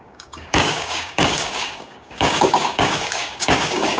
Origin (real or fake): fake